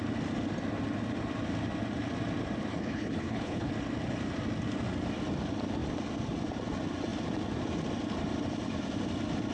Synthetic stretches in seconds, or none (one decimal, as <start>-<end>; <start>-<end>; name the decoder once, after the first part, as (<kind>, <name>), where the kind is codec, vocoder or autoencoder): 2.7-3.7 (codec, HILCodec)